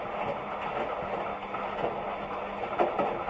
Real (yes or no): yes